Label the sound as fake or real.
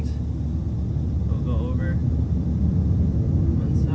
real